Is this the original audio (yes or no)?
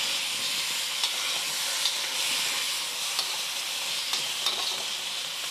yes